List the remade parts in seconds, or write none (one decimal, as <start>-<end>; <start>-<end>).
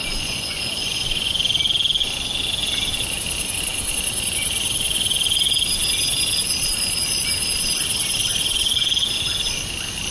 0.0-1.3